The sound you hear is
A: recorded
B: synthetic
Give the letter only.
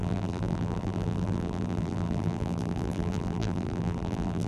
B